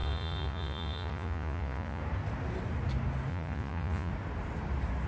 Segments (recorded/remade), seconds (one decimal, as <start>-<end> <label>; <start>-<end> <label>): 0.0-2.0 remade; 2.0-3.3 recorded; 3.3-4.1 remade; 4.1-5.1 recorded